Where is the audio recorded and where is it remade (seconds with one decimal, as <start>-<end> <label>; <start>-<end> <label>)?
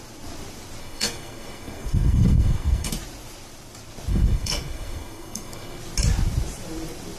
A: 0.0-0.8 recorded; 0.8-2.9 remade; 2.9-4.1 recorded; 4.1-5.8 remade; 5.8-7.2 recorded